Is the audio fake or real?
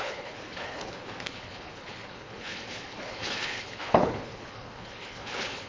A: fake